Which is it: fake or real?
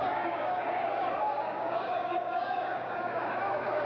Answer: fake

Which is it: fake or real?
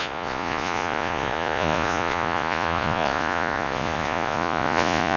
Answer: fake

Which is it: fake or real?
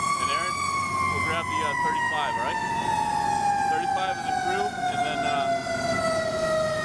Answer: real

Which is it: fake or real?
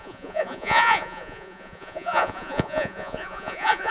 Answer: fake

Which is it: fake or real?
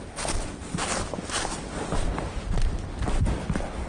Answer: real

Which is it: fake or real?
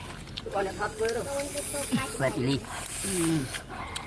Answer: real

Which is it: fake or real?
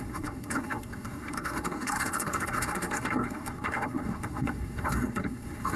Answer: fake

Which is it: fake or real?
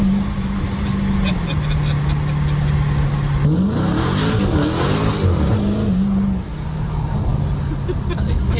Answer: real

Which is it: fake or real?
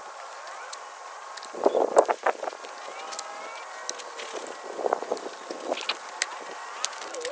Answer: real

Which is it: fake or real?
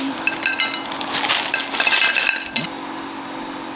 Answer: real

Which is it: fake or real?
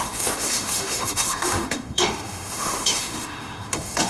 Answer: fake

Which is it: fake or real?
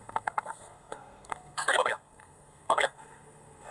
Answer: fake